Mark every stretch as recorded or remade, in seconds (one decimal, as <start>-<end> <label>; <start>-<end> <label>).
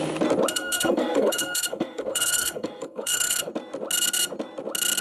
0.0-0.5 recorded; 0.5-3.5 remade; 3.5-5.0 recorded